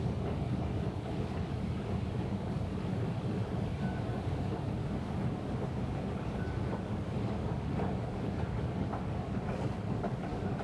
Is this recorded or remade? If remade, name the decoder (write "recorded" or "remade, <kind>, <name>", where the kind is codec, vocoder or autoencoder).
remade, codec, DAC